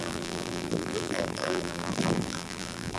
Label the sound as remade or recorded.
remade